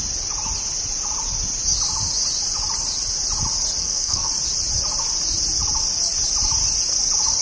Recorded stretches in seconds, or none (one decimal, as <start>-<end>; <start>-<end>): 0.0-3.8; 4.3-7.4